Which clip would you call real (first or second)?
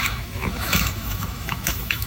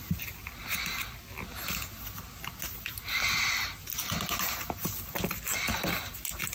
second